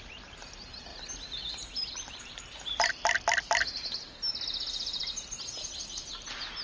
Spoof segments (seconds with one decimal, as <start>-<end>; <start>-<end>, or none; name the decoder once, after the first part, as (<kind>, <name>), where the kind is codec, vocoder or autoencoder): 0.9-2.9 (vocoder, BigVGAN v2)